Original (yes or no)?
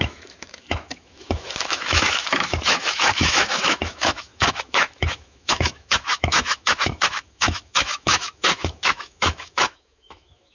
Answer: no